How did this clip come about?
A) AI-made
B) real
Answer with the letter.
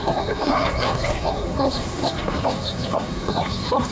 A